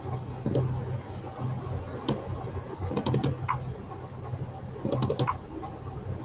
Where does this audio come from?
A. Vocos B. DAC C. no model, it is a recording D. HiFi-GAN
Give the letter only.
C